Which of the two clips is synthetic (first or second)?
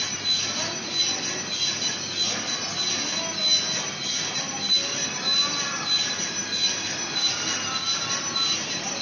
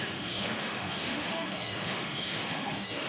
second